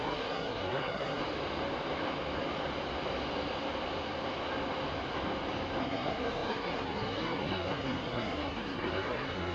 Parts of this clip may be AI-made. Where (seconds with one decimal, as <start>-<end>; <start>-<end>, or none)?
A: 0.0-1.2; 5.8-9.5